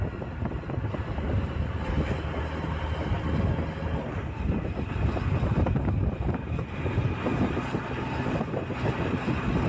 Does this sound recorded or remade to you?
recorded